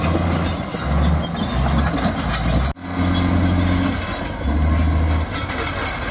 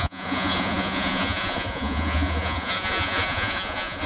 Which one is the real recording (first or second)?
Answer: first